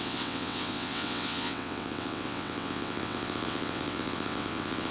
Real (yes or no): no